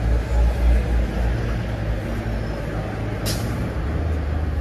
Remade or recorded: recorded